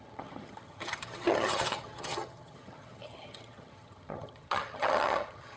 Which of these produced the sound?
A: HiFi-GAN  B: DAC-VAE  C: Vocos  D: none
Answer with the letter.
A